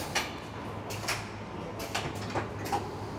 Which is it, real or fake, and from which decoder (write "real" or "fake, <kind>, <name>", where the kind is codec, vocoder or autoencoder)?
real